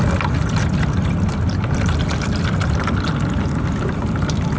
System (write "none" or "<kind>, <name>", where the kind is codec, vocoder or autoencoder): none